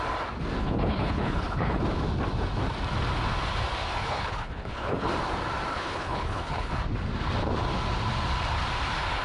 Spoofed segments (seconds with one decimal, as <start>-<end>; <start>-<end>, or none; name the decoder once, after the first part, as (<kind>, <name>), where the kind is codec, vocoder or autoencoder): 0.6-1.8 (codec, HILCodec); 4.0-5.1; 5.7-6.7